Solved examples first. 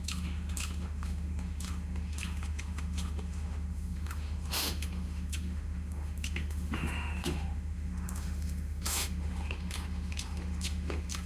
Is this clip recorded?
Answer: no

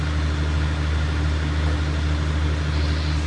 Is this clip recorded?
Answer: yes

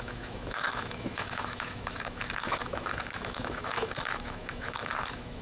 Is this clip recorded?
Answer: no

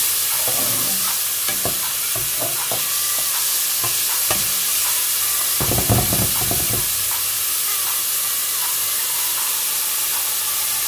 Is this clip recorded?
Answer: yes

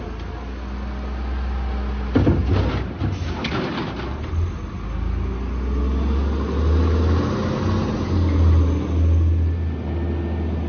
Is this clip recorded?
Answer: yes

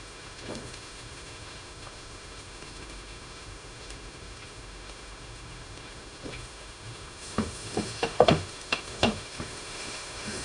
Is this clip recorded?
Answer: no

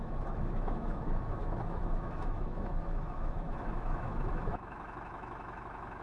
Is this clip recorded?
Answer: no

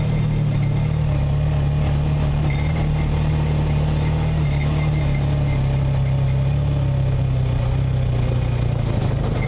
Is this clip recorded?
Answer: yes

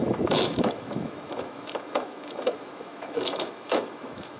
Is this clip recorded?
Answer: no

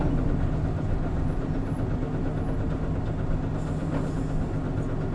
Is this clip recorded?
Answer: yes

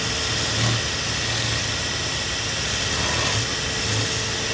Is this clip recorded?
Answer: yes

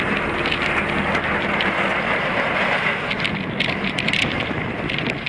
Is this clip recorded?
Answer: yes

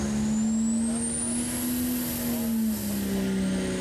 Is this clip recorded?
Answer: yes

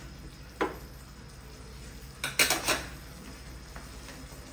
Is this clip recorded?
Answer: yes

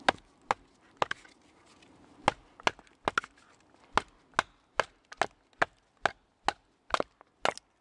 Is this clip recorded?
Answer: yes